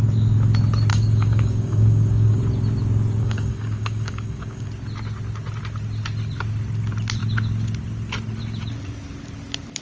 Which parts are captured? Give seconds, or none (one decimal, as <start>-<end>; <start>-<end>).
0.0-0.9; 2.4-3.2; 4.7-9.8